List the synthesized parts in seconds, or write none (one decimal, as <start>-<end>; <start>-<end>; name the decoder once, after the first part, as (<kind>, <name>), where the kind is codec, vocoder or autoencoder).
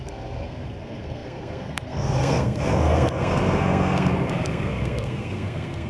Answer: 0.0-5.9 (codec, SNAC)